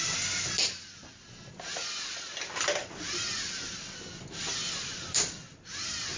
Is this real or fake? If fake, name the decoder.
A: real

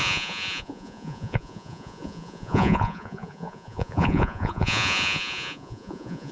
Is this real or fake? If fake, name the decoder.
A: fake, vocoder, Vocos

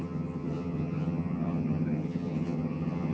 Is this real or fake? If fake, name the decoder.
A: fake, vocoder, HiFi-GAN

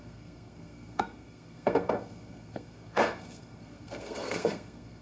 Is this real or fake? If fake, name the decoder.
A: fake, codec, SNAC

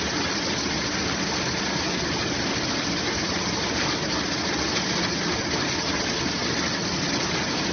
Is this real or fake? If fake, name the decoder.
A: real